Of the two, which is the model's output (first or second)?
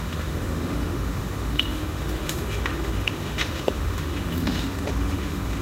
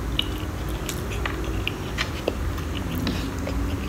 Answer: first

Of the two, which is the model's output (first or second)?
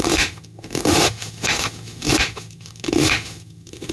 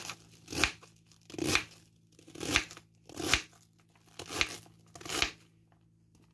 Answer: first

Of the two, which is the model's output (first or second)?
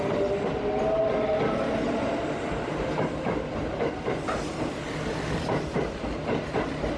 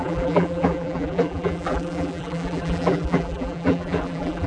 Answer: second